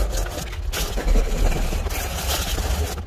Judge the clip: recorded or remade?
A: recorded